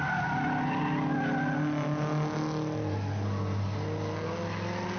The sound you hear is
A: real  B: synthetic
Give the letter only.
A